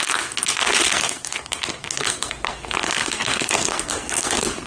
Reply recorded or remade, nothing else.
remade